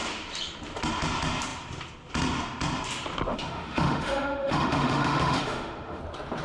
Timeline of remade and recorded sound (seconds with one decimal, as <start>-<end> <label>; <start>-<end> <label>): 0.0-3.3 recorded; 3.3-6.0 remade; 6.0-6.4 recorded